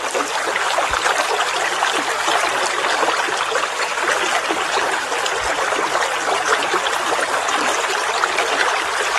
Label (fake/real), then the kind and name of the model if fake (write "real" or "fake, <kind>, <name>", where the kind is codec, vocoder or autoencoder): real